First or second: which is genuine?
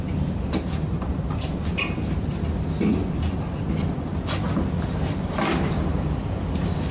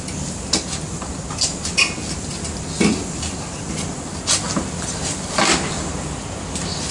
second